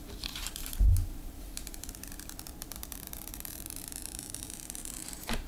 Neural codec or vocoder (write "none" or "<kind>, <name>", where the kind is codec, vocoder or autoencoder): vocoder, BigVGAN v2